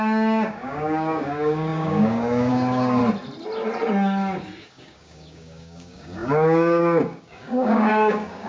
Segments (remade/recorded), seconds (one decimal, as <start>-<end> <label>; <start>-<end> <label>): 0.0-3.0 remade; 3.0-4.6 recorded; 4.6-8.5 remade